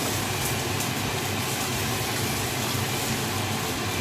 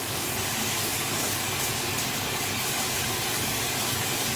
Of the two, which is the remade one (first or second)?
second